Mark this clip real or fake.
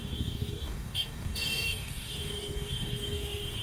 fake